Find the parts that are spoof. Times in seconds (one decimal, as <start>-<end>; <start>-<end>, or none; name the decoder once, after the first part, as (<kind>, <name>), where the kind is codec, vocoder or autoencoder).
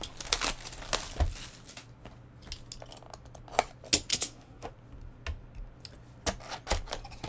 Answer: 4.1-4.7 (codec, SNAC)